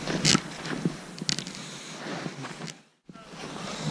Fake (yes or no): no